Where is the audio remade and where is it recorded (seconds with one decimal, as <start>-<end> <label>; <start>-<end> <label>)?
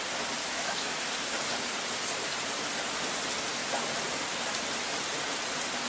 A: 0.0-0.4 recorded; 0.4-1.1 remade; 1.1-5.9 recorded